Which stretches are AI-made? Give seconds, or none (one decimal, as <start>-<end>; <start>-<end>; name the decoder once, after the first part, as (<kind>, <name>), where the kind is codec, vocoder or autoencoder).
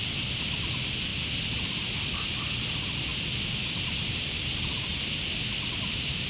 0.0-1.1 (vocoder, BigVGAN v2); 1.9-4.9; 5.7-6.3